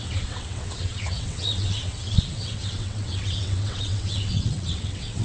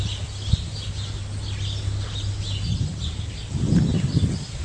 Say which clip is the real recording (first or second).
second